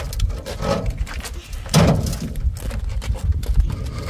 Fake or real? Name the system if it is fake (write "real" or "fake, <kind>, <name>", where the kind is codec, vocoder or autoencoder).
real